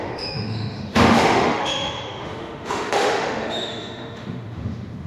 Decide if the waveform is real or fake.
fake